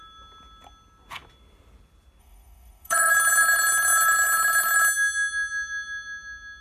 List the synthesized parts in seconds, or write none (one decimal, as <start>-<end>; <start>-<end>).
2.2-3.1